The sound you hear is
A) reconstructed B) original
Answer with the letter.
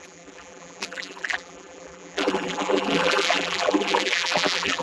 A